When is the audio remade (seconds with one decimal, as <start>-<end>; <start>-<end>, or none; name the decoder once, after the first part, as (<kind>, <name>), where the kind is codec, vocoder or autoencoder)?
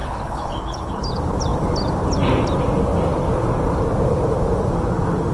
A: 0.0-1.0 (codec, HILCodec)